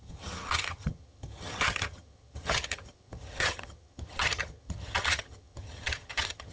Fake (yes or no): yes